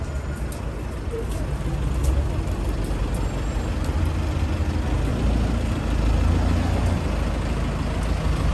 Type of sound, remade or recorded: recorded